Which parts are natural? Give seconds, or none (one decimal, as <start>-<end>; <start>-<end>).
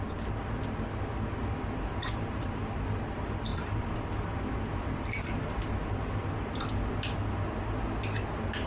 0.0-2.0; 2.7-3.5; 5.6-8.7